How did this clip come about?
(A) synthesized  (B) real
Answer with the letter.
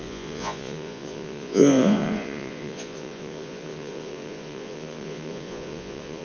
A